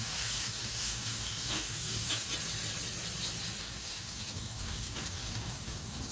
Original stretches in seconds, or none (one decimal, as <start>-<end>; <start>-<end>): 2.3-3.6